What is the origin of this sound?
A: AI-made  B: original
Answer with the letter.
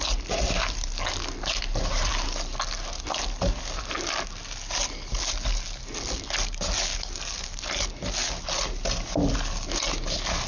B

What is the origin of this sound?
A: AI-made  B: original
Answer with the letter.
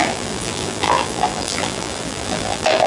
A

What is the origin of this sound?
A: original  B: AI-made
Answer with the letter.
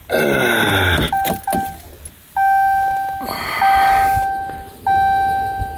A